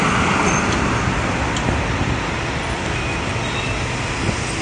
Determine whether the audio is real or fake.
real